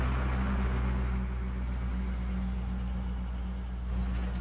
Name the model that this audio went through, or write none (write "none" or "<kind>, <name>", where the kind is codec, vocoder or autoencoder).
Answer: none